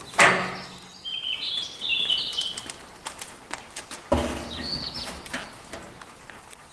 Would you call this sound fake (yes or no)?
no